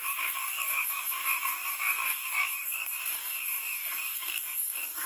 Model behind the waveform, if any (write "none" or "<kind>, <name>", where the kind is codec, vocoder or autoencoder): codec, DAC